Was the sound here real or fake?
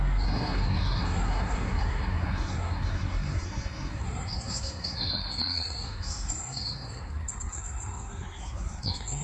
fake